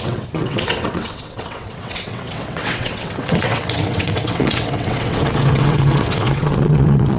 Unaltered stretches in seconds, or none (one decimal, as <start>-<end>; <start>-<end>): none